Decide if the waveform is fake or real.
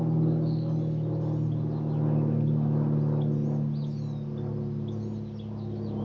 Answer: real